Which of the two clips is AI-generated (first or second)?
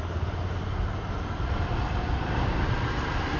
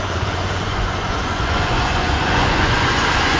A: second